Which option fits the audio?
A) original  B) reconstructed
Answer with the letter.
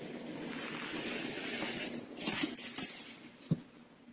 A